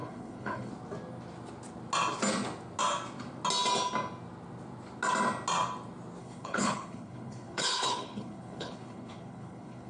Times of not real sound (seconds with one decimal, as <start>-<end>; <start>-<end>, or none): 0.0-0.7; 6.2-9.9